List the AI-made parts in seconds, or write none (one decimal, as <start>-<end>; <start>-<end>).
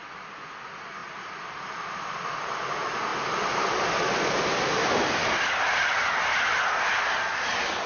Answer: none